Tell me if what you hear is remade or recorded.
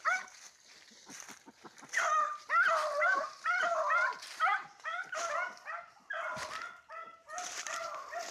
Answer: recorded